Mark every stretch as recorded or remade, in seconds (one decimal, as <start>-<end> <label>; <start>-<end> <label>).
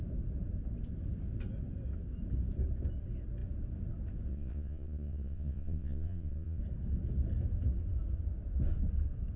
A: 0.0-4.3 recorded; 4.3-6.6 remade; 6.6-9.4 recorded